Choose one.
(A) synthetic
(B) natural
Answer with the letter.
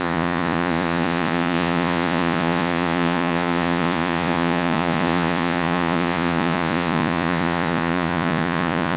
A